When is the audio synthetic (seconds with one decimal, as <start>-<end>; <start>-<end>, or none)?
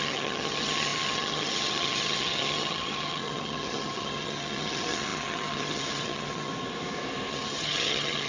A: 0.0-6.5; 7.3-8.3